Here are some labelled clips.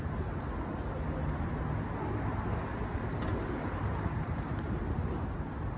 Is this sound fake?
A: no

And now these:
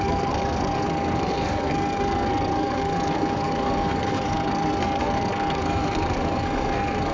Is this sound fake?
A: yes